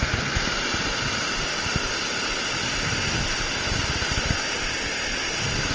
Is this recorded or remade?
recorded